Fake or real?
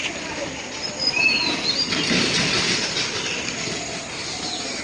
fake